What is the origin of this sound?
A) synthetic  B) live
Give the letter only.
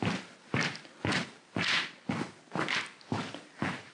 B